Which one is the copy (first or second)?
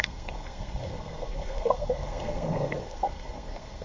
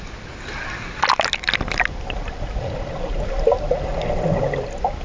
first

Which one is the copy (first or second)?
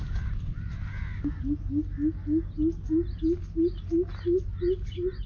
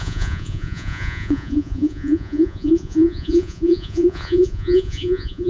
second